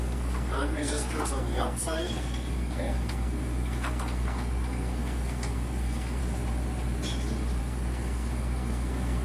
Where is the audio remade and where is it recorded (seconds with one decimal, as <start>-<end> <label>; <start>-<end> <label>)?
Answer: 0.0-6.2 remade; 6.2-7.6 recorded; 7.6-9.2 remade